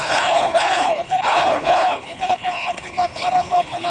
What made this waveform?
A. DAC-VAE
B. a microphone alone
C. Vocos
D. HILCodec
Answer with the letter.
D